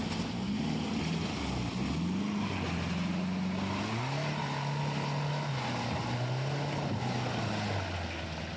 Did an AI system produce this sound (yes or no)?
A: no